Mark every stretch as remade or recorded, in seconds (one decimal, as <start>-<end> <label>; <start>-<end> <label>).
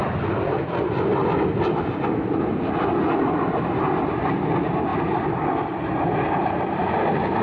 0.0-7.4 recorded